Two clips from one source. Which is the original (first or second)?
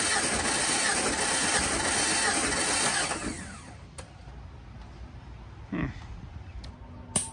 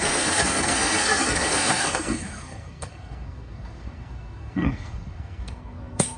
first